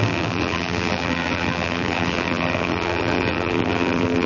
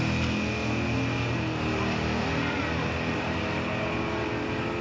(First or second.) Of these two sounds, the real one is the second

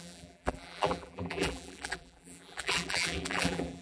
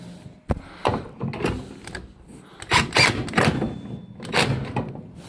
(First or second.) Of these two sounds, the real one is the second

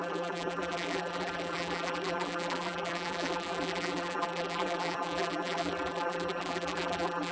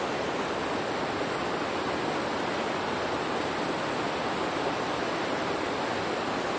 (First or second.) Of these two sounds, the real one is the second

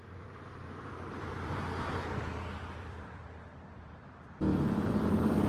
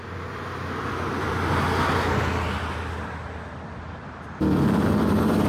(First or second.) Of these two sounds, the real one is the second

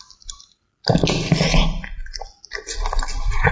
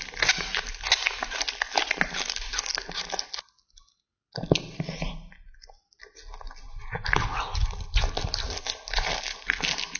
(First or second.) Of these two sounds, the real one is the second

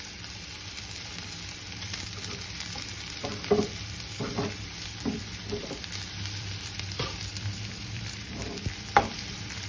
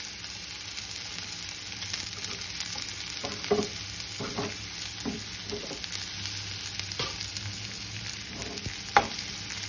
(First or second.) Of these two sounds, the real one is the second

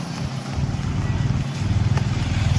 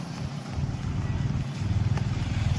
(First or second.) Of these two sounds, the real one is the first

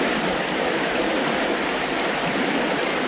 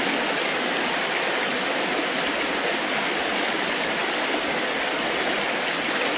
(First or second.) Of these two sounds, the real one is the second